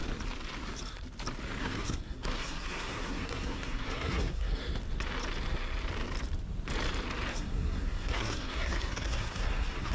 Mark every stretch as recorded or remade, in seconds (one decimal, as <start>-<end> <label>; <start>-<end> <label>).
0.0-1.6 recorded; 1.6-4.6 remade; 4.6-7.3 recorded; 7.3-9.9 remade

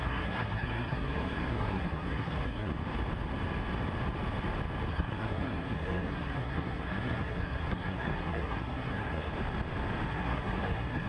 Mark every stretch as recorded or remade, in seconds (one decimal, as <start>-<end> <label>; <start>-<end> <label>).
0.0-2.7 remade; 2.7-4.9 recorded; 4.9-9.3 remade; 9.3-10.1 recorded; 10.1-11.1 remade

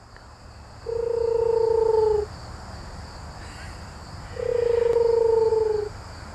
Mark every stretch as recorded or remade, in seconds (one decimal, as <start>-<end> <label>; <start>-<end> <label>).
0.0-6.3 recorded

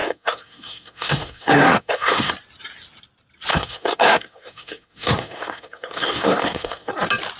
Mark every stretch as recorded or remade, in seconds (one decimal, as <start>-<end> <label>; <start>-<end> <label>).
0.0-2.3 remade; 2.3-3.5 recorded; 3.5-6.9 remade; 6.9-7.4 recorded

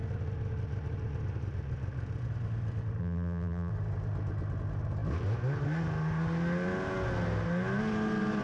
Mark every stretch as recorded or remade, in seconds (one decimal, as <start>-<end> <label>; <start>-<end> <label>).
0.0-3.0 recorded; 3.0-3.7 remade; 3.7-8.4 recorded

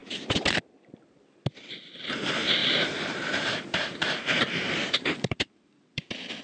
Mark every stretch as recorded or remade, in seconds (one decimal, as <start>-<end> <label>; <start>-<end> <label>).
0.0-2.6 recorded; 2.6-6.0 remade; 6.0-6.4 recorded

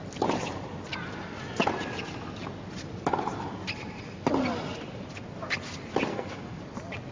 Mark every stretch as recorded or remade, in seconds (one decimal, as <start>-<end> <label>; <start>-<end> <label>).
0.0-6.1 recorded; 6.1-6.6 remade; 6.6-7.1 recorded